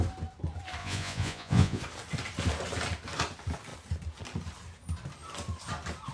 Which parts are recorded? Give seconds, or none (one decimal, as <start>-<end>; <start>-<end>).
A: 0.0-0.8; 1.8-6.1